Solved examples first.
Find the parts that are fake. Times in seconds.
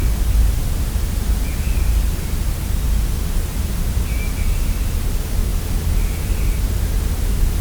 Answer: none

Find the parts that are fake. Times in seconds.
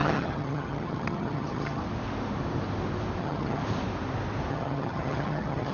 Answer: 0.0-1.8; 3.2-3.6; 4.5-5.7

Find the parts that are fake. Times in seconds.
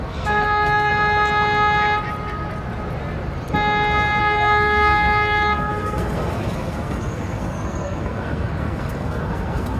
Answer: 0.0-0.9; 4.2-9.8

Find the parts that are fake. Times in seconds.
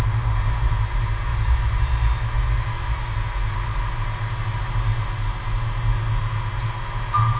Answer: none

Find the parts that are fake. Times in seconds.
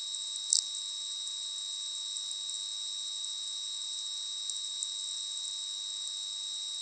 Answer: none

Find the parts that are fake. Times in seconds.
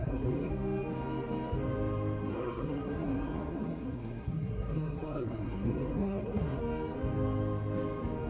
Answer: 0.0-0.5; 2.3-6.6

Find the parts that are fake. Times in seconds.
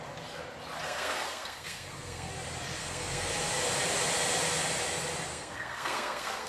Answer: 0.8-2.3; 2.8-3.3; 5.3-6.5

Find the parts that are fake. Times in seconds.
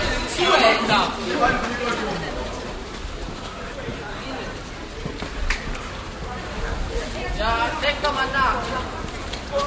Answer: 3.9-4.6